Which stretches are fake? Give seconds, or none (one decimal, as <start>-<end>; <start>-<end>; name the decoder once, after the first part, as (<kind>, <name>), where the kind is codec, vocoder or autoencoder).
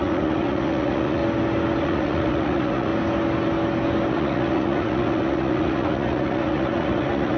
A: 0.0-1.2 (vocoder, Vocos); 1.8-2.9; 4.1-7.4